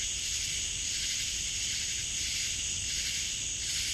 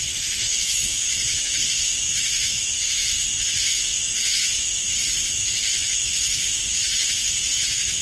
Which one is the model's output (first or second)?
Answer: second